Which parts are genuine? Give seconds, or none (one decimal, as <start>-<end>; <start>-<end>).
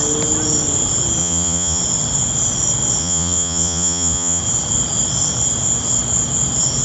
0.0-1.2; 1.8-3.0; 4.4-6.8